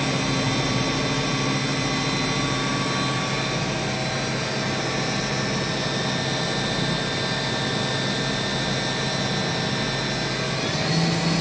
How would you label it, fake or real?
real